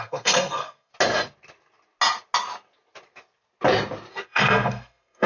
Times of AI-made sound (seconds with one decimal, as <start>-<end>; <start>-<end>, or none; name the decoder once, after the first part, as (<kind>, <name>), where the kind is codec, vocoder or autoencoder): 0.0-0.9 (codec, SNAC); 4.1-5.3